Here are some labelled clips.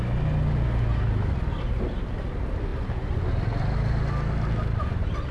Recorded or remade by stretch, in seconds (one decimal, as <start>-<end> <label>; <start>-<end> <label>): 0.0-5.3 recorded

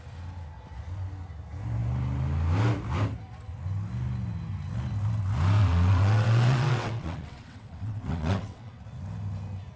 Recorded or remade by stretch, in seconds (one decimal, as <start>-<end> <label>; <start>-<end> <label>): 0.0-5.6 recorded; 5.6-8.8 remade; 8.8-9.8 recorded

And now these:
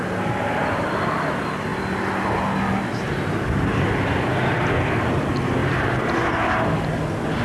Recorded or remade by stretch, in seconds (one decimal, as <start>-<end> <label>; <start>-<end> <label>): 0.0-7.4 recorded

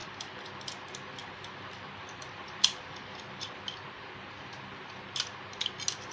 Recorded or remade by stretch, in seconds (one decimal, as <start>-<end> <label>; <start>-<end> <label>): 0.0-0.6 remade; 0.6-1.2 recorded; 1.2-3.6 remade; 3.6-6.1 recorded

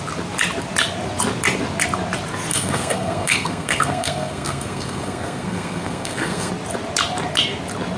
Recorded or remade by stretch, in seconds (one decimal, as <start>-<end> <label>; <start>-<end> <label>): 0.0-2.5 recorded; 2.5-6.5 remade; 6.5-8.0 recorded

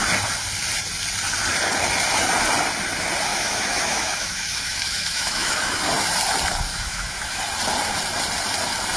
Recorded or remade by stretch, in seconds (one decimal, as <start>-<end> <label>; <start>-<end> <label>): 0.0-3.3 recorded; 3.3-5.8 remade; 5.8-6.7 recorded; 6.7-7.4 remade; 7.4-9.0 recorded